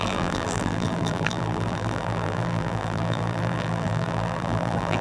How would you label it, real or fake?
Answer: fake